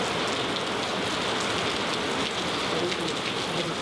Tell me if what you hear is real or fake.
real